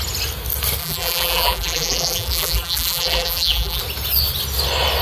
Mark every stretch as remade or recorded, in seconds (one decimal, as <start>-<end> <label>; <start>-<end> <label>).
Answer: 0.0-0.8 recorded; 0.8-3.8 remade; 3.8-5.0 recorded